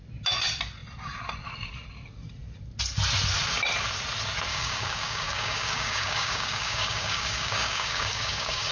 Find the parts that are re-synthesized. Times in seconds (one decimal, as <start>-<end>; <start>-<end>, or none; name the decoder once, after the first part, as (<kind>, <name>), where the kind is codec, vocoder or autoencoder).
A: 4.5-8.7 (codec, DAC)